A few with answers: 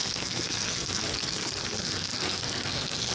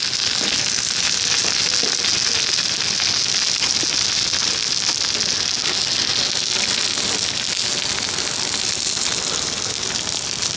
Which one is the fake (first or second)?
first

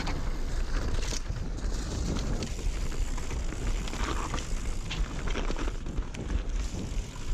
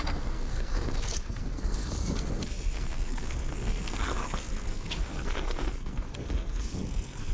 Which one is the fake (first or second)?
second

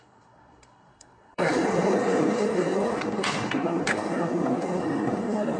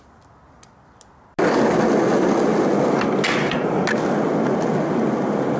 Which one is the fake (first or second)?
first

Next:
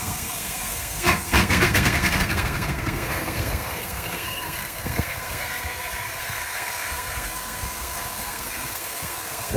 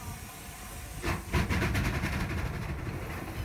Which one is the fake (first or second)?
first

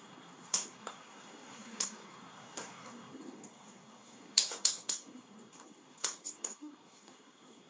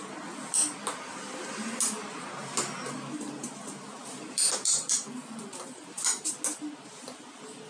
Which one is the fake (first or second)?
first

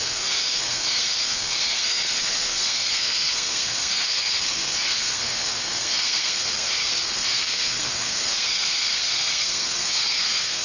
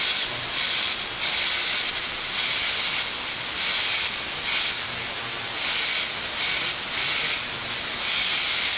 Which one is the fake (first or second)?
first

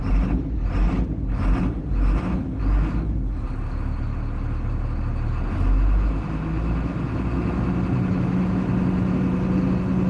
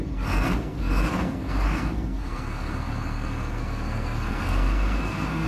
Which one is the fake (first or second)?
second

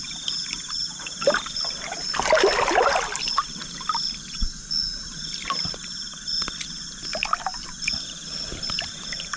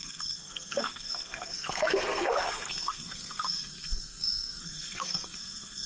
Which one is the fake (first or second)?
second